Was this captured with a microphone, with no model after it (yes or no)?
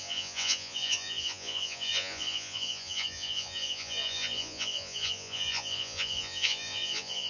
no